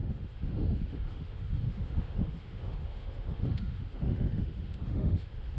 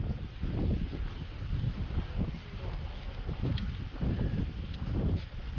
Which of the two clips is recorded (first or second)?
second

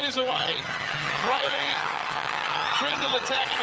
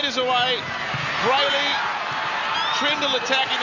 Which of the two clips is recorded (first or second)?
second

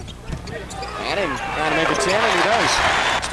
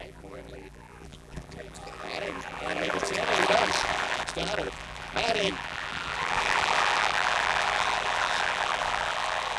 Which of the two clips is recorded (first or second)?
first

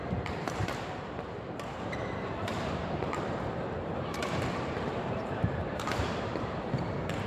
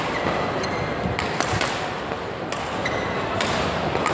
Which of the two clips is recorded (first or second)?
second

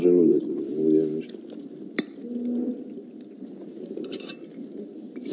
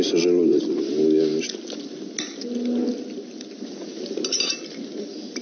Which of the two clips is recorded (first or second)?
second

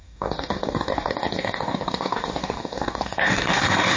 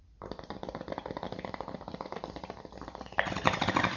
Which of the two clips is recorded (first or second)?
second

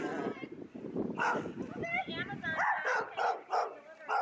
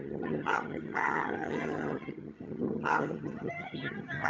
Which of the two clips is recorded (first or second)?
first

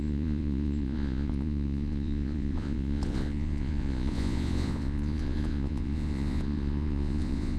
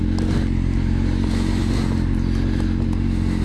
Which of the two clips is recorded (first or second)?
second